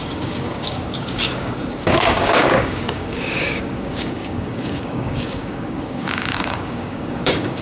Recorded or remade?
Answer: remade